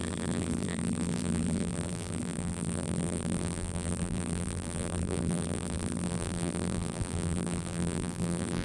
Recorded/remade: remade